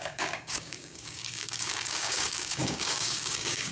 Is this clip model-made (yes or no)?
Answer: yes